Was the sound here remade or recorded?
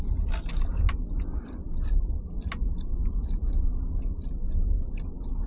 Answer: recorded